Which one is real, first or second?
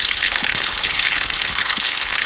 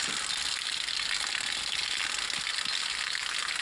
second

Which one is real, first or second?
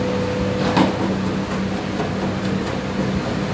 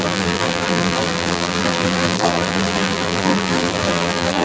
first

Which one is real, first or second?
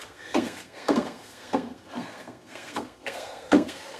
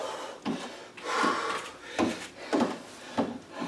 second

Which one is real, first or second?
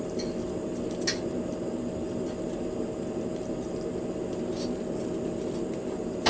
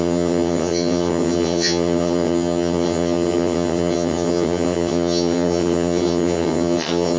first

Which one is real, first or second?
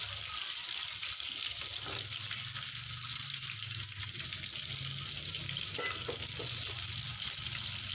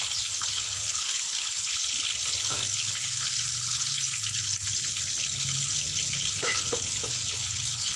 first